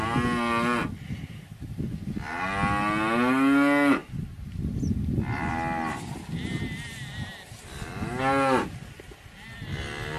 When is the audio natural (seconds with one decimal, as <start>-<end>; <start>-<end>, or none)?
0.0-10.2